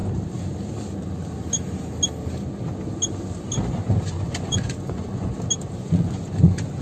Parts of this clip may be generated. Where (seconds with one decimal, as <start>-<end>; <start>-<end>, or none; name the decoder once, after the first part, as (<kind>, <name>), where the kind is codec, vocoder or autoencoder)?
3.8-5.3 (vocoder, Vocos); 5.8-6.8